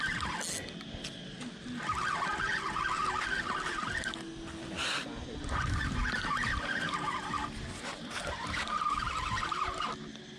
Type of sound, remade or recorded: recorded